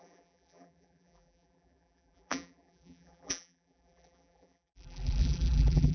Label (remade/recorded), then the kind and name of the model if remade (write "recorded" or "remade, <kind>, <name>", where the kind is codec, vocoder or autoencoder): remade, vocoder, BigVGAN v2